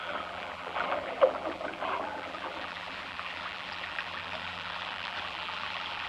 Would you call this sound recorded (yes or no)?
no